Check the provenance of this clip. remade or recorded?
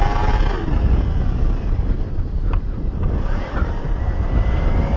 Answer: remade